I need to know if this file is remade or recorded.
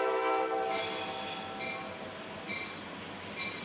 recorded